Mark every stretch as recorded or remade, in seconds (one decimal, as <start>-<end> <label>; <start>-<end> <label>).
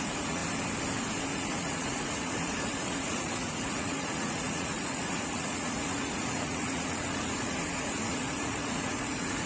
0.0-0.4 remade; 0.4-1.3 recorded; 1.3-9.5 remade